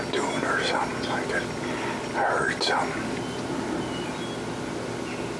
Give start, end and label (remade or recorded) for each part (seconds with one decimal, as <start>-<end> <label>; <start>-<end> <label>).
0.0-5.4 recorded